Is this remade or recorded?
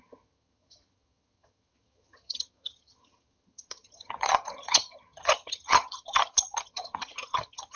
remade